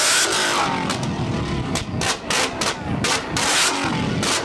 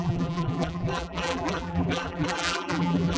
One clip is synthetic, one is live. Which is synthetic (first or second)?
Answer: second